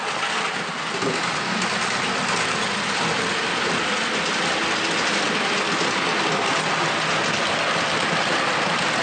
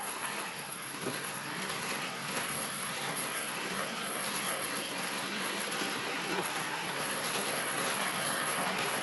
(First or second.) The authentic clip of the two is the first